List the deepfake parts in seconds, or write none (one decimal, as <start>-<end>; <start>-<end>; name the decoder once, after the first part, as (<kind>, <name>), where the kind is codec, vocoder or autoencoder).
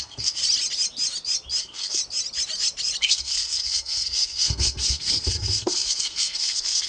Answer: 0.0-0.4 (codec, SNAC); 1.6-2.0; 3.0-6.9